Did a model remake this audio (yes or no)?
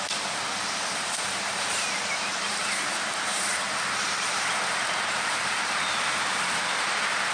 yes